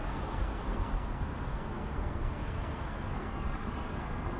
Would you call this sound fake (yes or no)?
yes